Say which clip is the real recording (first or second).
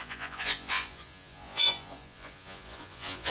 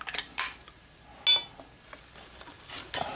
second